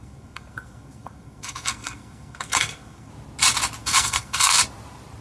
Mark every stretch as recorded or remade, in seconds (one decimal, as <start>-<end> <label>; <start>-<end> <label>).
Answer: 0.0-3.1 remade; 3.1-3.8 recorded; 3.8-4.6 remade; 4.6-5.2 recorded